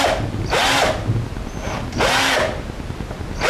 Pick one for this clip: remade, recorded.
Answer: recorded